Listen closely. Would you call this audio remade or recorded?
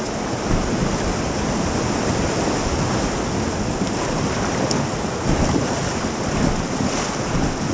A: recorded